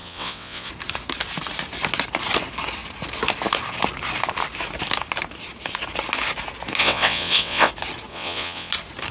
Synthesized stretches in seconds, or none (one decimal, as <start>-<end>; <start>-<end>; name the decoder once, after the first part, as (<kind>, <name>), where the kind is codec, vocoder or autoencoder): 0.0-0.7 (vocoder, WaveNeXt); 6.8-7.7; 8.1-8.7